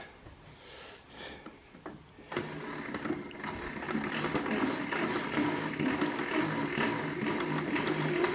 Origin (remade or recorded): remade